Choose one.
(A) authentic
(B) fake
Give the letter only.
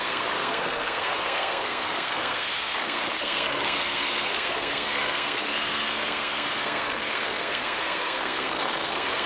B